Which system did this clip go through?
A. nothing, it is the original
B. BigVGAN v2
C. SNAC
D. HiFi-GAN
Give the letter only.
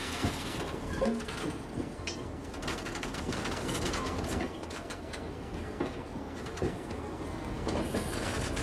C